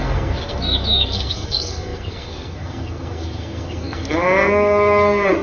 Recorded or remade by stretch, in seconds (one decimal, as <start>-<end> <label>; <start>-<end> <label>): 0.0-5.4 remade